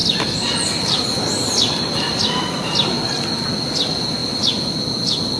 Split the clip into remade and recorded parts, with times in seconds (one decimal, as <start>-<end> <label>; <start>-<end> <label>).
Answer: 0.0-5.4 recorded